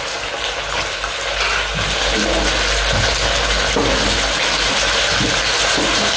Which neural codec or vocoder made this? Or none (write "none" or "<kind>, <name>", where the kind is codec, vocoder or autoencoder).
none